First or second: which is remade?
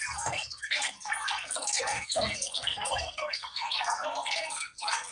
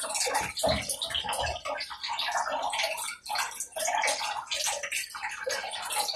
first